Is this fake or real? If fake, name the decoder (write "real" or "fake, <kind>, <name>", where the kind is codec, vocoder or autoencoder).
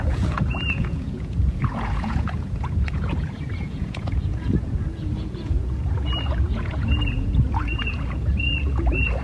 fake, vocoder, Vocos